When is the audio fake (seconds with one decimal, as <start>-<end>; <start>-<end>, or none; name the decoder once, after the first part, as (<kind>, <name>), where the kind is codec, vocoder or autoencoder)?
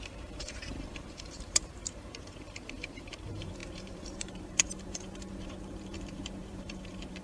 0.0-7.2 (vocoder, BigVGAN v2)